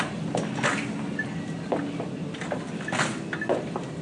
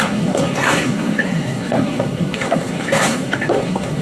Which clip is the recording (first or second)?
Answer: first